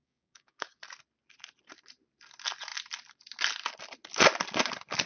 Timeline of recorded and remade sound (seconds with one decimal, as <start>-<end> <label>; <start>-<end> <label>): 0.0-0.8 remade; 0.8-5.1 recorded